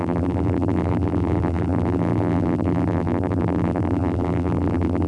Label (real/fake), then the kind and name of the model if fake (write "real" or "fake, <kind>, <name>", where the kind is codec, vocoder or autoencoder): fake, vocoder, BigVGAN v2